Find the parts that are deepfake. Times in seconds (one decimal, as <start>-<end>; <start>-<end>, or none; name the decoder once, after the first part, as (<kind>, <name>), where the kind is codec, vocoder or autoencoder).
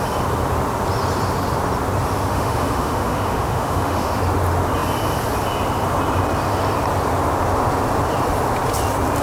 2.3-4.2 (autoencoder, DAC-VAE)